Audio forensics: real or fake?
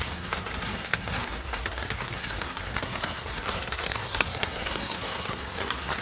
fake